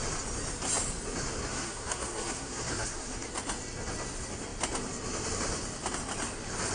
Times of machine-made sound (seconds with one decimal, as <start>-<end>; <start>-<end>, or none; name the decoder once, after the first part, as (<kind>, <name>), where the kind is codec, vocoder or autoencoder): 1.5-3.3 (codec, SNAC)

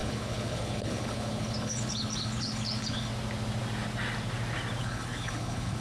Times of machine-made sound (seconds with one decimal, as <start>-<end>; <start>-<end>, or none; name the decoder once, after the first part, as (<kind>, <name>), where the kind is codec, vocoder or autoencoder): 0.0-3.1 (codec, HILCodec); 4.8-5.8